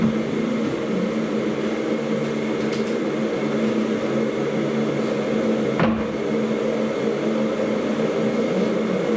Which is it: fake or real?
real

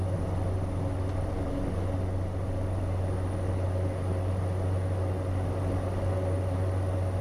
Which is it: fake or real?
real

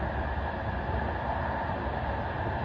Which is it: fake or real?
real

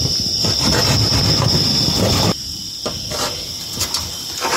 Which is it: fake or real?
real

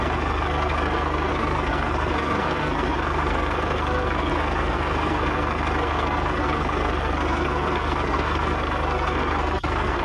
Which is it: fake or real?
fake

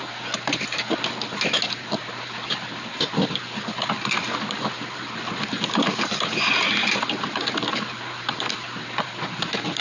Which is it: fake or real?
real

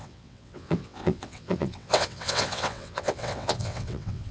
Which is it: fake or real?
fake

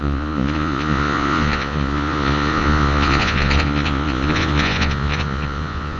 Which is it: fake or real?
fake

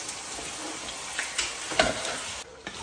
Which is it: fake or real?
real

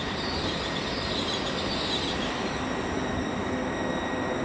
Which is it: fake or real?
real